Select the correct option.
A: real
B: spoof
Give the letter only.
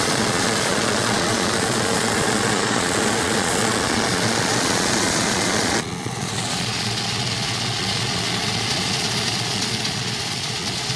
B